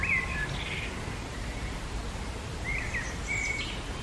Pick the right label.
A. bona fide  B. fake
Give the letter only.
A